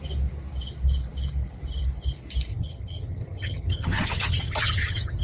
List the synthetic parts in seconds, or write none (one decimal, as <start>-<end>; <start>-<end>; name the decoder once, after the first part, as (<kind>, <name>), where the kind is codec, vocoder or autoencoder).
2.5-5.2 (vocoder, HiFi-GAN)

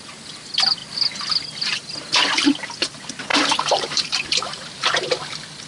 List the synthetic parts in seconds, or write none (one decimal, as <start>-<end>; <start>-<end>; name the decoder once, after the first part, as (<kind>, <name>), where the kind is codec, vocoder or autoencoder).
3.3-4.7 (vocoder, BigVGAN v2)

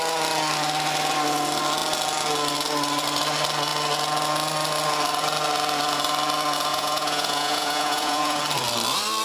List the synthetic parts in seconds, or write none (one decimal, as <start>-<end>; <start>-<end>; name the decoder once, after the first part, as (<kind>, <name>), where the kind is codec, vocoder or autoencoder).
6.7-8.4 (vocoder, Vocos)

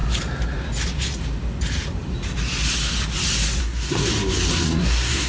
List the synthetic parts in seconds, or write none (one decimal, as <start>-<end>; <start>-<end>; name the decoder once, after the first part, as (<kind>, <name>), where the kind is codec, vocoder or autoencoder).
3.6-4.1 (codec, SNAC); 4.5-5.3